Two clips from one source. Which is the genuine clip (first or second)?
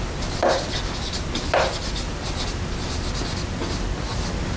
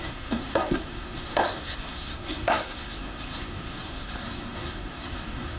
first